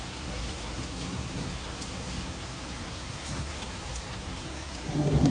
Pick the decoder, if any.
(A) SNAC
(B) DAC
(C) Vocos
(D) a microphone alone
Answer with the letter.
A